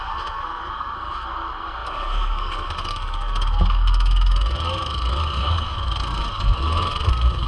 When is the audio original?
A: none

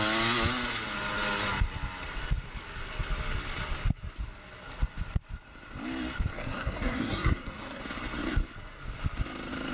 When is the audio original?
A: 0.0-6.3; 7.8-9.7

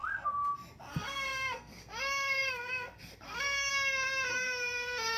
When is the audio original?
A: 0.0-0.9; 3.7-4.3

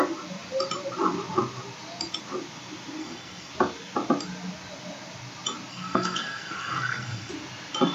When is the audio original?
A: 0.0-3.0; 3.5-5.7; 7.3-7.9